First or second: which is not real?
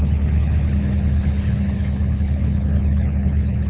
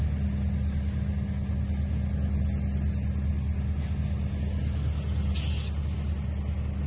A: first